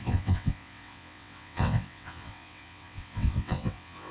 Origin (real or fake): fake